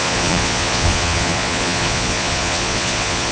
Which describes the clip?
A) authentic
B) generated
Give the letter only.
B